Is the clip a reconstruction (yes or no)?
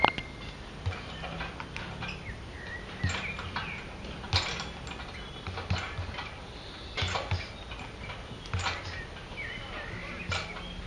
no